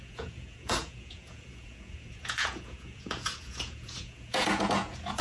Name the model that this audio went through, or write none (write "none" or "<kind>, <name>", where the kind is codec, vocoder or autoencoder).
vocoder, Vocos